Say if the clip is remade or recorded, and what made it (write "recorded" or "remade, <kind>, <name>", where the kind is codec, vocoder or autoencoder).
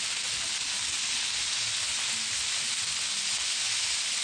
recorded